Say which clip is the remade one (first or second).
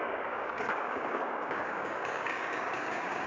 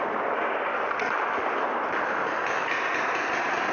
first